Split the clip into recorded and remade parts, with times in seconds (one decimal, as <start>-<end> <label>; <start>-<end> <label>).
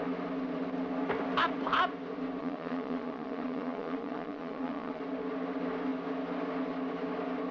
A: 0.0-2.4 recorded; 2.4-5.0 remade; 5.0-7.5 recorded